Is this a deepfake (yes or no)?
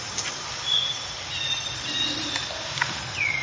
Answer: no